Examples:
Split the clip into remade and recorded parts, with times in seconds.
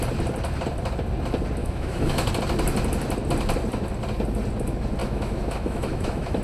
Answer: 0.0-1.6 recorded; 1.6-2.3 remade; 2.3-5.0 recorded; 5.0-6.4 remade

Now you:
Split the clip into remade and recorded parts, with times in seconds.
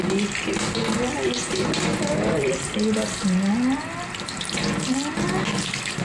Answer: 0.0-6.0 recorded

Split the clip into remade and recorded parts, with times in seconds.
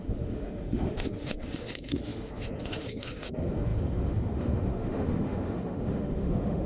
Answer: 0.0-6.7 remade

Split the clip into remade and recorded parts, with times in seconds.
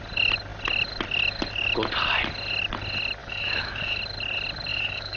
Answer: 0.0-3.2 recorded; 3.2-4.0 remade; 4.0-4.7 recorded; 4.7-5.2 remade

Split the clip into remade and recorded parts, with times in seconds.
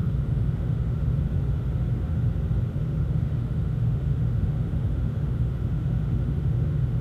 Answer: 0.0-1.1 remade; 1.1-2.8 recorded; 2.8-7.0 remade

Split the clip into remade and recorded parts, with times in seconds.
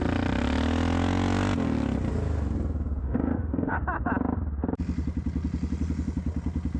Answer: 0.0-3.0 recorded; 3.0-3.8 remade; 3.8-6.8 recorded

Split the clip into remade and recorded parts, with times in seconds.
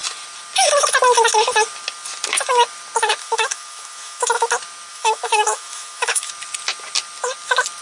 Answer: 0.0-3.2 recorded; 3.2-4.5 remade; 4.5-4.9 recorded; 4.9-6.3 remade; 6.3-7.8 recorded